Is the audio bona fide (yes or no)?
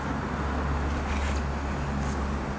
yes